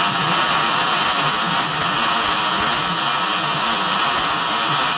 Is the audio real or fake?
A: real